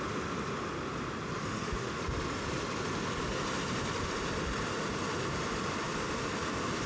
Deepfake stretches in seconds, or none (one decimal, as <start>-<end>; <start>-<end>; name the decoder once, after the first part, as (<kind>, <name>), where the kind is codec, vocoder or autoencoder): 1.4-2.0 (autoencoder, DAC-VAE)